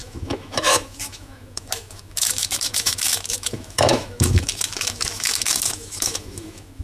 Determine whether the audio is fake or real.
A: fake